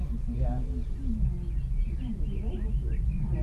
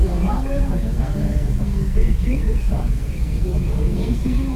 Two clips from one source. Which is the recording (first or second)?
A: first